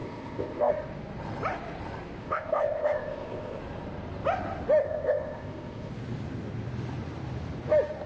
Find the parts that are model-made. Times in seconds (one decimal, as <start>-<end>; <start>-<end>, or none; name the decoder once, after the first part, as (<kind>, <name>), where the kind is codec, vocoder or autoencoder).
0.0-0.7 (codec, ZipCodec); 2.2-3.6; 4.8-5.9